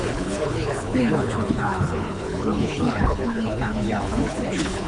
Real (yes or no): no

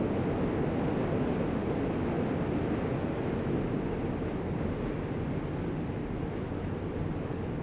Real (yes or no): yes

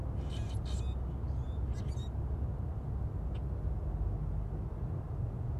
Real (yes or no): yes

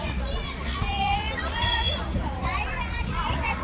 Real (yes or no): no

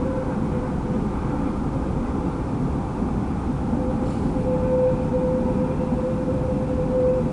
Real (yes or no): yes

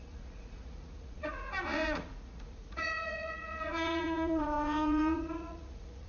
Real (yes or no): no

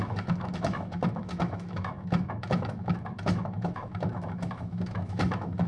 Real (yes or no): no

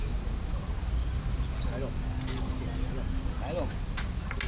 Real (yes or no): yes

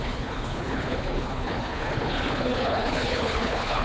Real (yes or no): no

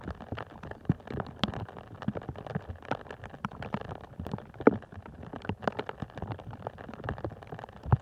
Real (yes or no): yes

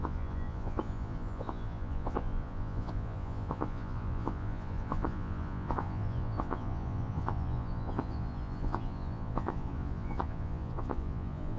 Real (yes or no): no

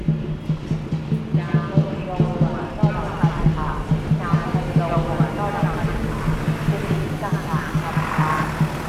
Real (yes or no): yes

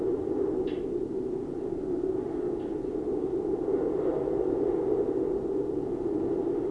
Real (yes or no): yes